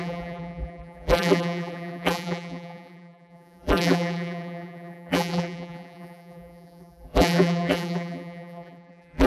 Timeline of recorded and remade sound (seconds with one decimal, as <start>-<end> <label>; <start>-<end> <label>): 0.0-9.3 remade